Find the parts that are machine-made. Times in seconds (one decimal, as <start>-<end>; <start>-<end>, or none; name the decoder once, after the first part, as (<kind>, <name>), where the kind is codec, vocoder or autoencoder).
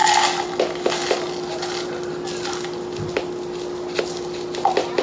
none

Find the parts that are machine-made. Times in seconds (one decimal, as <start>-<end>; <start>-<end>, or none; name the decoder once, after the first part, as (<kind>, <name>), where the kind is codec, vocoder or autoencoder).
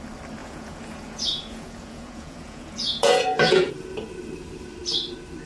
0.4-3.7 (vocoder, Vocos)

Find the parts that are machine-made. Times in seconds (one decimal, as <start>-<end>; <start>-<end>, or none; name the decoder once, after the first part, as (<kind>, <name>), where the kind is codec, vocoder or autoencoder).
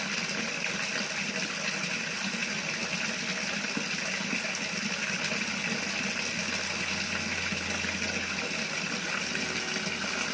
none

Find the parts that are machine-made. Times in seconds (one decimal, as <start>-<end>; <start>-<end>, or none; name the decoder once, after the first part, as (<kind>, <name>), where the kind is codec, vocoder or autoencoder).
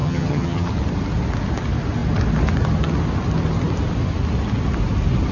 0.0-0.7 (vocoder, HiFi-GAN)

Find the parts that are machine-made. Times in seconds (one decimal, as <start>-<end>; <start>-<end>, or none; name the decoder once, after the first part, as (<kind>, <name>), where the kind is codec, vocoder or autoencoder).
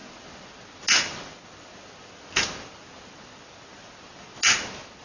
none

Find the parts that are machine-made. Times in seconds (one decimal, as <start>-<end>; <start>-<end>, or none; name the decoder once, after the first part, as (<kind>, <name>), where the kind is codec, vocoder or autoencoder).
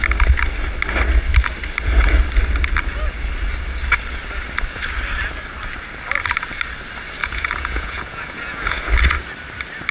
7.2-8.9 (vocoder, Vocos)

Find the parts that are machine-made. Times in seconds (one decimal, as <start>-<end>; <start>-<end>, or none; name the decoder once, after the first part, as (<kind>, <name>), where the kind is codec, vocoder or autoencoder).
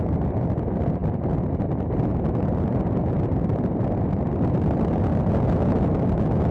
none